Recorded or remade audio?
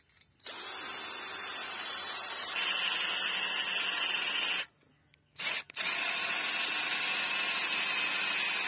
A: recorded